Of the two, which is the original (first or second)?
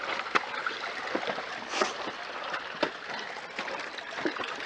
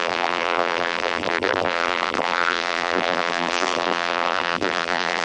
first